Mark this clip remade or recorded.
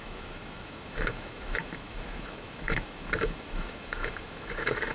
remade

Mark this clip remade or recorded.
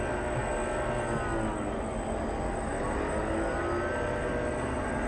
recorded